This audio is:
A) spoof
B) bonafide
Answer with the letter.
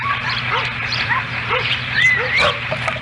A